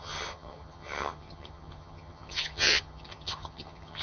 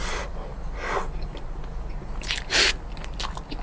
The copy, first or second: first